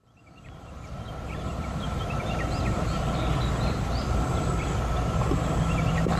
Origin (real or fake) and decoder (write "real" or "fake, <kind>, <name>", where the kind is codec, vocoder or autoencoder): fake, vocoder, BigVGAN v2